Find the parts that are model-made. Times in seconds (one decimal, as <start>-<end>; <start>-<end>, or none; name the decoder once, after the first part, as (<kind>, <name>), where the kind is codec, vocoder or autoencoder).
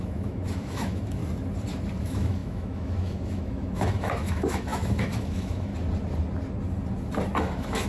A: 0.0-1.2 (autoencoder, DAC-VAE); 2.0-5.7; 7.4-7.9